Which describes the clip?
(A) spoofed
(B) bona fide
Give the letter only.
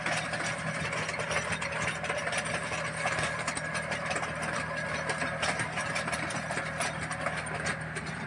B